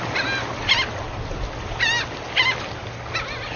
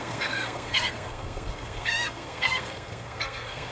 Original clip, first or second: first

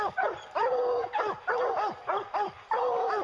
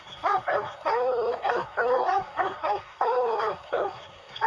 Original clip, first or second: first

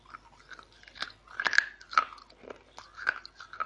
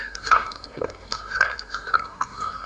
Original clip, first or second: first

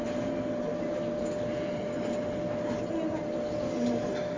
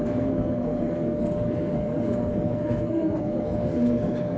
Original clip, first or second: first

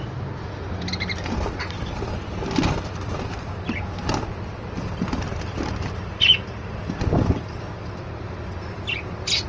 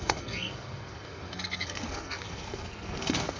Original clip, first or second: first